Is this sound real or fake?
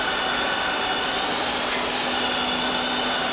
real